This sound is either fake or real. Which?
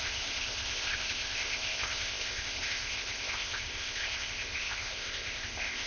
fake